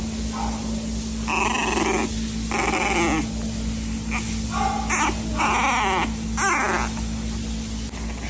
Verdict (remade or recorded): recorded